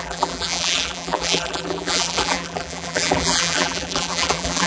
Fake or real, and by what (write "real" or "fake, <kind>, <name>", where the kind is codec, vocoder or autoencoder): fake, vocoder, BigVGAN v2